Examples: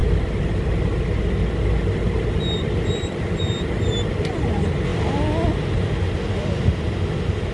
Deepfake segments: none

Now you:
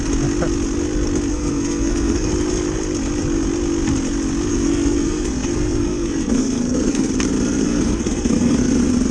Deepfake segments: 1.3-2.3 (codec, SNAC); 4.5-7.1; 7.6-8.7

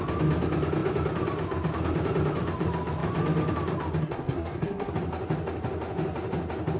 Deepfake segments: 4.0-4.9 (codec, SNAC)